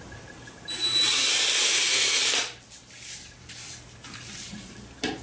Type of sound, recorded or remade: recorded